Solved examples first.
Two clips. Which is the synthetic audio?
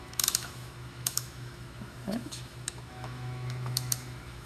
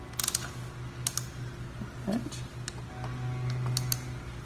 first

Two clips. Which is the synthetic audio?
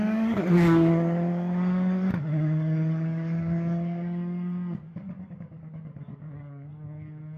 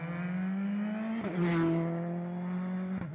first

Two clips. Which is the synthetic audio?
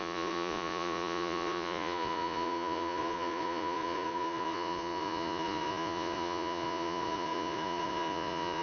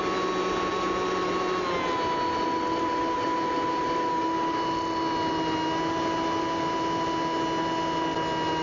first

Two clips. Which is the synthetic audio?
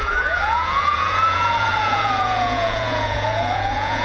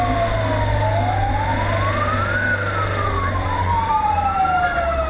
first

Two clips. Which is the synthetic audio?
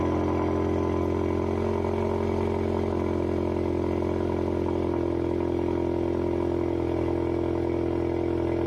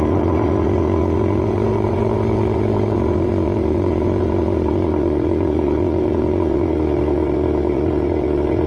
second